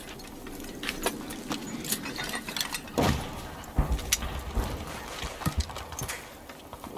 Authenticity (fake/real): real